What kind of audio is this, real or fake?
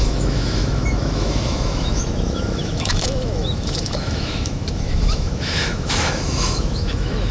fake